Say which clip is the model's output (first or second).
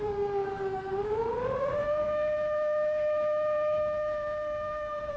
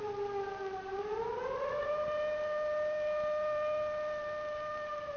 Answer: first